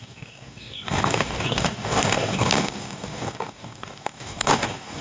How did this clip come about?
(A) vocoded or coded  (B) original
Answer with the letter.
A